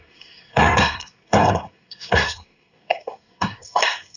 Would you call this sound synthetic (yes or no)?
yes